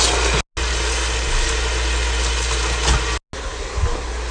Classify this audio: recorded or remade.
recorded